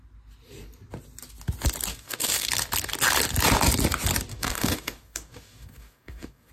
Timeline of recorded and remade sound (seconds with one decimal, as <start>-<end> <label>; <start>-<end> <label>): 0.0-1.9 recorded; 1.9-2.5 remade; 2.5-4.3 recorded; 4.3-6.5 remade